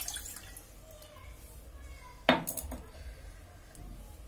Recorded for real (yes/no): yes